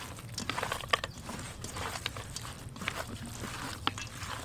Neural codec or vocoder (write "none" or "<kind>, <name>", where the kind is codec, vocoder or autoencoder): none